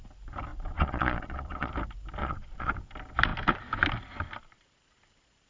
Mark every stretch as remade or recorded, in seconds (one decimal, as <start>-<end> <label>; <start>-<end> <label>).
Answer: 0.0-0.5 recorded; 0.5-1.7 remade; 1.7-2.2 recorded; 2.2-2.7 remade; 2.7-5.5 recorded